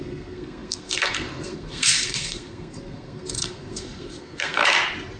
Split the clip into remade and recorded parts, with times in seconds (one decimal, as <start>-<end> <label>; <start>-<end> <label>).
0.0-4.6 remade; 4.6-5.2 recorded